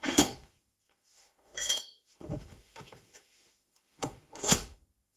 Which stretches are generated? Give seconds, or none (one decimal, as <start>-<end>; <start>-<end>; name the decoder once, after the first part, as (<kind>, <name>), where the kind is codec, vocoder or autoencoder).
0.0-5.2 (autoencoder, DAC-VAE)